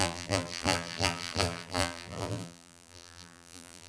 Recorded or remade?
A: remade